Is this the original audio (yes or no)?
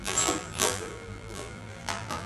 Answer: no